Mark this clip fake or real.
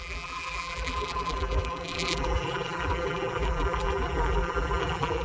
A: fake